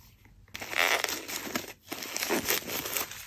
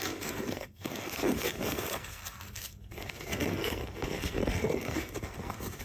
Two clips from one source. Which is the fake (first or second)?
second